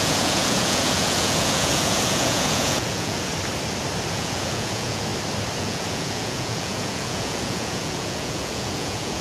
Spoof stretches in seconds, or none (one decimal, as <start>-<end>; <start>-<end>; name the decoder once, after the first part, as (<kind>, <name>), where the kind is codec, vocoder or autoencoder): 0.0-3.3 (vocoder, Vocos); 4.1-5.1; 5.6-9.2

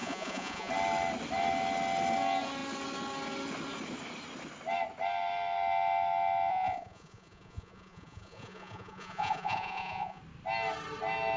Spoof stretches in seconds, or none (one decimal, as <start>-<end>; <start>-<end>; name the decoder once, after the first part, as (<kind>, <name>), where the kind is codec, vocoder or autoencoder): 0.0-0.7 (vocoder, Vocos); 6.5-10.2

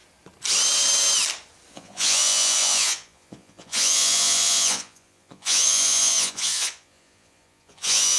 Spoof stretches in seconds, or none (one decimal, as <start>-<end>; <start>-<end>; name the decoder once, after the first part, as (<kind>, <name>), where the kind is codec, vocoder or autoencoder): 1.7-8.2 (vocoder, Vocos)

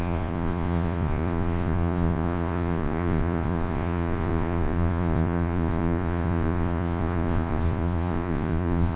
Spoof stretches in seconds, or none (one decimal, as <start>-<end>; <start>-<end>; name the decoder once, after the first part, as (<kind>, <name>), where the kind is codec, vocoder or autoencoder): 0.0-9.0 (vocoder, Vocos)

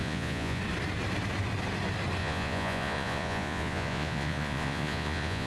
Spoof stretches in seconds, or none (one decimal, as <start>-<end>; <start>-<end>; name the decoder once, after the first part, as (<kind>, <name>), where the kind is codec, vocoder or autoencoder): 0.0-0.6 (vocoder, Vocos); 2.2-5.5

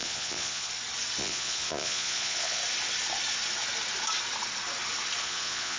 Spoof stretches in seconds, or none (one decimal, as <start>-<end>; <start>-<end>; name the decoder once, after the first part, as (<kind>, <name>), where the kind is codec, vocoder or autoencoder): 0.0-0.7 (vocoder, Vocos); 1.2-2.6; 5.2-5.8

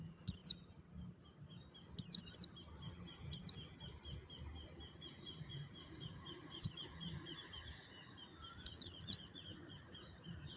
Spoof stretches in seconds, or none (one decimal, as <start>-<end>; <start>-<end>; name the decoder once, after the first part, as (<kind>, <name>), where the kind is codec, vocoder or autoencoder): 0.0-0.4 (vocoder, Vocos); 5.0-10.6